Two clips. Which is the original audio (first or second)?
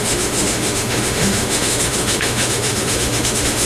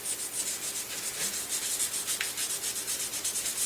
second